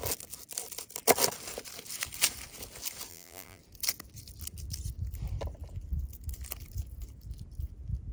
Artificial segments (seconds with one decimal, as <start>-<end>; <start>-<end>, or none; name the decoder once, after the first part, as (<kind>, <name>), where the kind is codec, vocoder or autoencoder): 3.1-3.6 (vocoder, BigVGAN v2)